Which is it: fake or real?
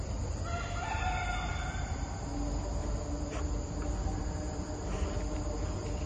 real